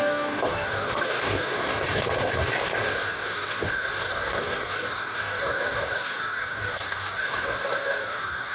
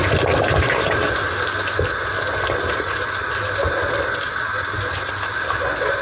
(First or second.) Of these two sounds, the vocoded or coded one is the first